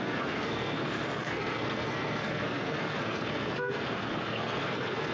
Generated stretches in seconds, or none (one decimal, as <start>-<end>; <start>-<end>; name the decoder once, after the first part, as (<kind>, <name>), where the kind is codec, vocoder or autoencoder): 0.0-5.1 (codec, SNAC)

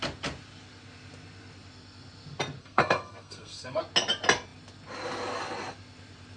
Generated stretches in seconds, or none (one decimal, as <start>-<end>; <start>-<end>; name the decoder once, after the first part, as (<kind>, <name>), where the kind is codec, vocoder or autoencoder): 2.6-3.8 (codec, SNAC)